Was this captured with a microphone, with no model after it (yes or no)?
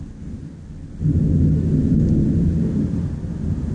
yes